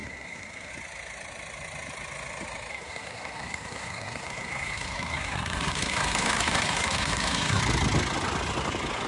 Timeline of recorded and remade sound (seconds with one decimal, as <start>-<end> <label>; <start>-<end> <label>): 0.0-0.7 remade; 0.7-2.7 recorded; 2.7-7.6 remade; 7.6-9.1 recorded